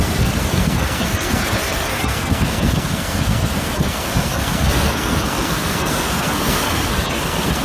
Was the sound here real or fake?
fake